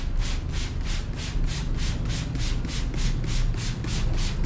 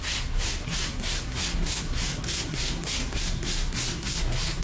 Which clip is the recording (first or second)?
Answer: first